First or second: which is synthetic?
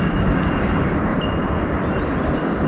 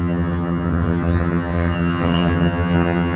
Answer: second